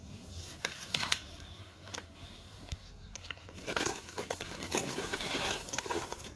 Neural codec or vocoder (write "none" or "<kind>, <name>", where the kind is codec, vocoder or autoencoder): codec, SNAC